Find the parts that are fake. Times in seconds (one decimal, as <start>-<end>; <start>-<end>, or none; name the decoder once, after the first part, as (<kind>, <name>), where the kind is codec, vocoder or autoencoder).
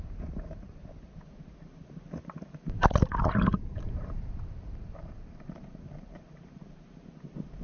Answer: 0.0-0.8 (vocoder, BigVGAN v2); 1.6-7.6